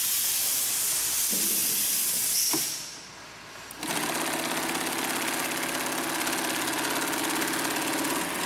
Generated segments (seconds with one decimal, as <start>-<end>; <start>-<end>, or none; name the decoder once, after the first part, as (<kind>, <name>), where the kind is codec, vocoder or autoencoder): none